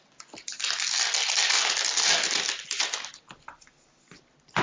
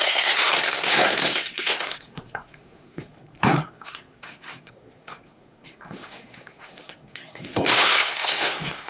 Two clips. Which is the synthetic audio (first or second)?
second